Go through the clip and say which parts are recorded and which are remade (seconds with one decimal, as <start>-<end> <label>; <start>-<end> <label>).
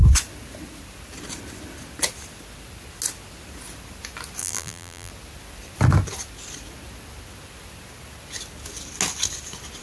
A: 0.0-4.4 recorded; 4.4-5.1 remade; 5.1-9.8 recorded